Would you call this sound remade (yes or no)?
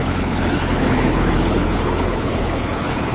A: yes